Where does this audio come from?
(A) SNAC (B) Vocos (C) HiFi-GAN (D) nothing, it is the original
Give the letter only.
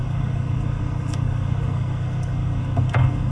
A